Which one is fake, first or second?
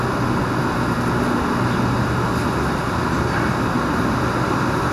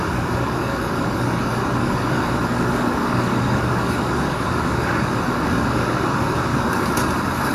second